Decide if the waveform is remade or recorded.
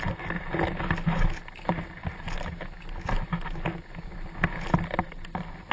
recorded